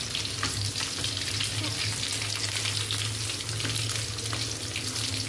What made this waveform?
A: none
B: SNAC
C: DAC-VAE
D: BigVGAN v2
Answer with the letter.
A